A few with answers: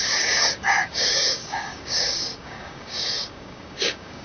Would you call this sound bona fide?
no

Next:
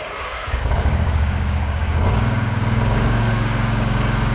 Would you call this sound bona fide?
no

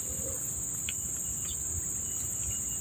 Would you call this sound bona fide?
yes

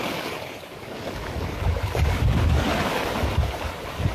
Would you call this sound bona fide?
no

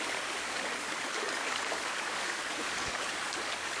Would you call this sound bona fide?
no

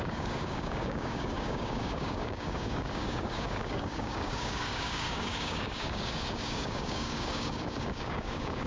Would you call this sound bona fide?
no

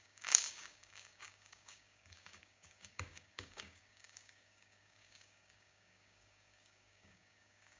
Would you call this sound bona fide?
no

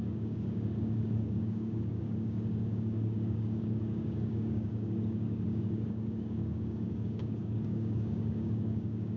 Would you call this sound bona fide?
no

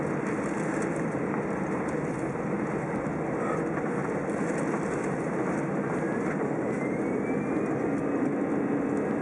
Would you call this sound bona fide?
yes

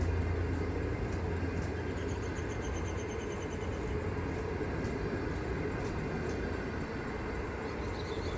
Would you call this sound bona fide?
yes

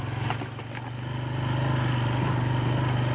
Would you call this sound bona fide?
yes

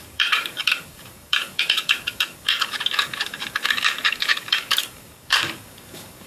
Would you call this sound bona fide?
no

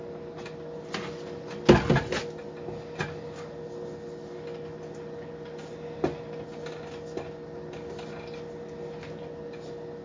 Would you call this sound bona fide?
yes